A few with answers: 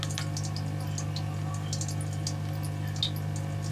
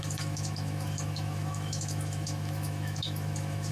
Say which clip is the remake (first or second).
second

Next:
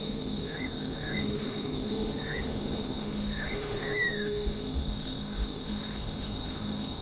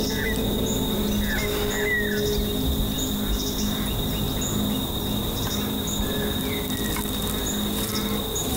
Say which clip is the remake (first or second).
first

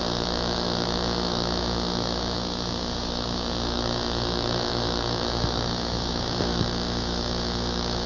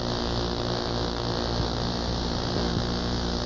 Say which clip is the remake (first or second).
first